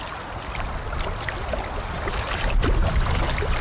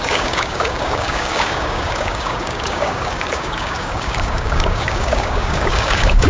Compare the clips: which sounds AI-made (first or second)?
second